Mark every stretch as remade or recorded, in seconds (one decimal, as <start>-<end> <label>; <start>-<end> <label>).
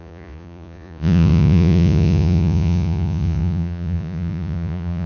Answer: 0.0-5.1 remade